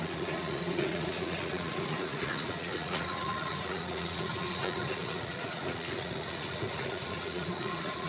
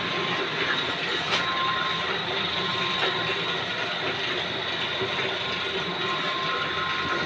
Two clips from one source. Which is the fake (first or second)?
first